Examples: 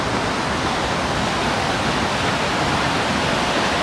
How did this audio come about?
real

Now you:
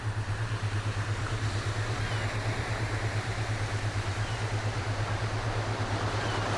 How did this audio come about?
fake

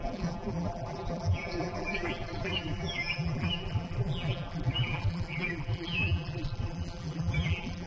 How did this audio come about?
fake